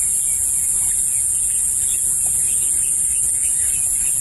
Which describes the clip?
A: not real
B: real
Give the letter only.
B